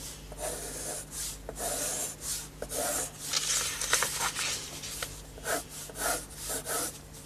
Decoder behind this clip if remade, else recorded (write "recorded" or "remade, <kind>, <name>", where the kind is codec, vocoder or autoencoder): recorded